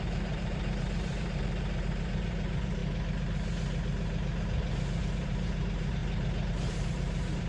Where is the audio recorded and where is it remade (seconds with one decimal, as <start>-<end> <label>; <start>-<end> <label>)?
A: 0.0-2.8 remade; 2.8-5.0 recorded; 5.0-6.0 remade; 6.0-6.5 recorded; 6.5-7.5 remade